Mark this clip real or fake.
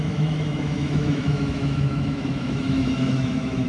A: fake